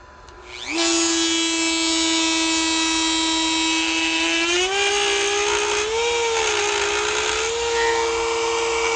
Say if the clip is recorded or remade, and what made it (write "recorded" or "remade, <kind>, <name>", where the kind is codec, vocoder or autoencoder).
recorded